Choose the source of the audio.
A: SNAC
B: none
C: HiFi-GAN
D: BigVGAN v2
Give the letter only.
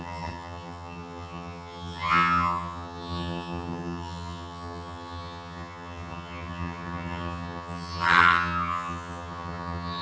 C